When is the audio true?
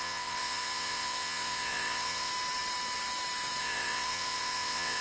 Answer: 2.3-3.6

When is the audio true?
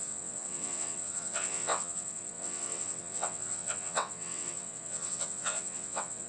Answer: none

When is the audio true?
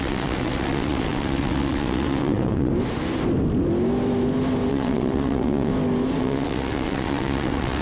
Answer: 2.7-4.7; 5.7-6.2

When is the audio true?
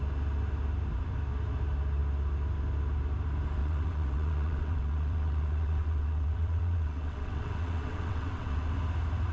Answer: 0.0-3.6; 8.7-9.3